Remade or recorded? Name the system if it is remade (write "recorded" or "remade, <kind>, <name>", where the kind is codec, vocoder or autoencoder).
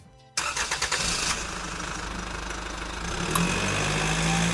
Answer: recorded